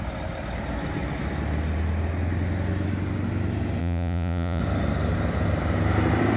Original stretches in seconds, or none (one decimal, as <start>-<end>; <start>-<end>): 0.0-3.8; 4.6-6.4